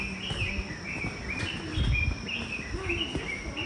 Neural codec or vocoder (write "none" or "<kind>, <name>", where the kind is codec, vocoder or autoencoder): none